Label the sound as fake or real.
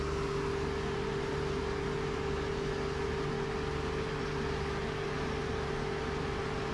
real